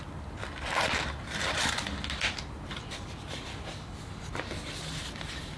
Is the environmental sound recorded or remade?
remade